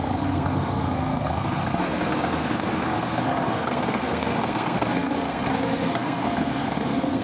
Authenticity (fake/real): fake